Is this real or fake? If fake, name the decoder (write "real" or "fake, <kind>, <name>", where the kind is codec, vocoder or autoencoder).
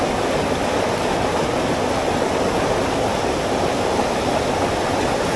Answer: real